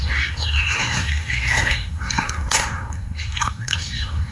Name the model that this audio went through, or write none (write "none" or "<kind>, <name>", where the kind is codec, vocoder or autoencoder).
codec, SNAC